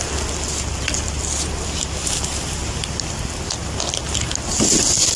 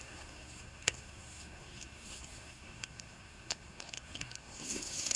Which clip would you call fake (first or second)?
second